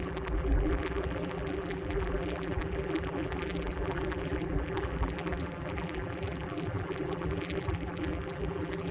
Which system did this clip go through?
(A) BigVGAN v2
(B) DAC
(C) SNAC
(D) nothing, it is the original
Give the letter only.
A